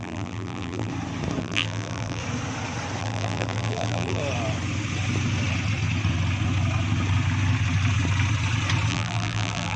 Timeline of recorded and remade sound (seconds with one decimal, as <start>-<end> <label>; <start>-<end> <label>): 0.0-0.9 remade; 0.9-1.4 recorded; 1.4-2.2 remade; 2.2-3.0 recorded; 3.0-4.2 remade; 4.2-8.9 recorded; 8.9-9.8 remade